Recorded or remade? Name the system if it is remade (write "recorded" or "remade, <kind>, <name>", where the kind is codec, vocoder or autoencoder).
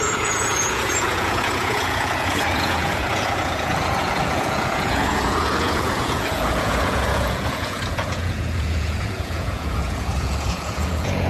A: remade, vocoder, Vocos